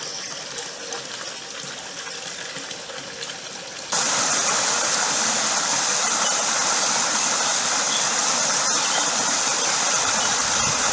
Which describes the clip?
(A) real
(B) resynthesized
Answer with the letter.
A